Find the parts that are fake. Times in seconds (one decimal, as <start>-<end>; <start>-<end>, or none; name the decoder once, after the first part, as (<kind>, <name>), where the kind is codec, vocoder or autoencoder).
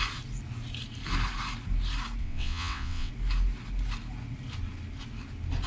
2.2-3.1 (vocoder, WaveNeXt)